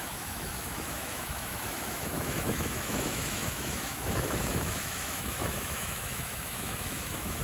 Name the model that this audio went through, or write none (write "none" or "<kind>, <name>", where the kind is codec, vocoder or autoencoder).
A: autoencoder, DAC-VAE